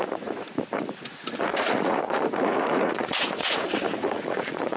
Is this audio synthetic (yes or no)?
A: yes